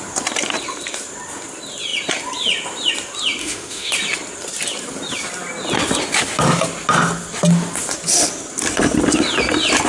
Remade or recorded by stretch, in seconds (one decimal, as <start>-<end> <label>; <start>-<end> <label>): 0.0-3.4 recorded; 3.4-3.9 remade; 3.9-9.9 recorded